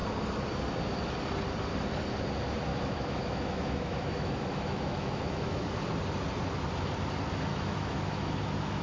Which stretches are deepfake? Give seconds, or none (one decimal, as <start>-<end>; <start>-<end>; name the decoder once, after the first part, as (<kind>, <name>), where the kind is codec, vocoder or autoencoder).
2.7-5.8 (autoencoder, DAC-VAE); 7.5-8.8

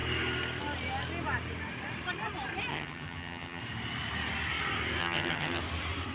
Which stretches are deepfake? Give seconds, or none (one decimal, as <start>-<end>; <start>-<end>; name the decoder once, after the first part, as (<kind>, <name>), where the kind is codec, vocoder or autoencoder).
2.7-3.6 (vocoder, HiFi-GAN); 5.0-5.6

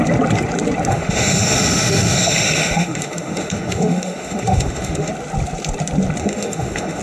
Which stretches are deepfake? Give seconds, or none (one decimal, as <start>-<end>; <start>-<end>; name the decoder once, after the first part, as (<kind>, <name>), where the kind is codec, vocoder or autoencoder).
0.9-5.1 (autoencoder, DAC-VAE); 6.2-7.0

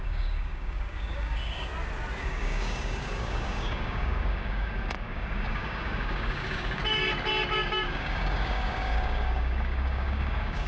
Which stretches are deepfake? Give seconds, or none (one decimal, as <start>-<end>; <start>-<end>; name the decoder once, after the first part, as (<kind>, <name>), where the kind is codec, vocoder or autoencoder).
0.0-1.7 (codec, DAC); 2.2-6.8; 7.5-10.7